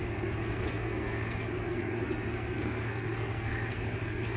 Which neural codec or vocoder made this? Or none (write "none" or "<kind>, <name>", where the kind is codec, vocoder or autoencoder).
codec, SNAC